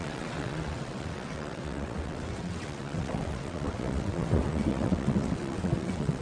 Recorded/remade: remade